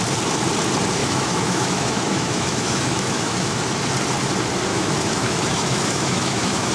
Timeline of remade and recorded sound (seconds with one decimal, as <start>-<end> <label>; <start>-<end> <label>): 0.0-1.0 recorded; 1.0-3.6 remade; 3.6-4.7 recorded; 4.7-6.7 remade